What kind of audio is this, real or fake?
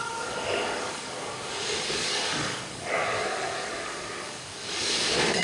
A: fake